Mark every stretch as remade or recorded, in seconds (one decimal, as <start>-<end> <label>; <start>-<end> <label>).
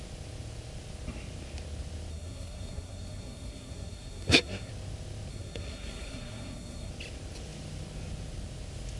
0.0-2.1 recorded; 2.1-4.7 remade; 4.7-5.3 recorded; 5.3-6.9 remade; 6.9-9.0 recorded